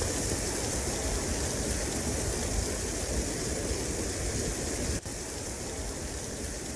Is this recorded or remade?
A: recorded